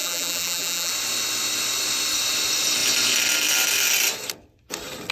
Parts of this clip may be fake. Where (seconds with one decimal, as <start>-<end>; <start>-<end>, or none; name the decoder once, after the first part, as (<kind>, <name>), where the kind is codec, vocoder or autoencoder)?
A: 0.0-0.9 (vocoder, BigVGAN v2)